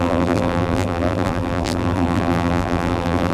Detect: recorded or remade remade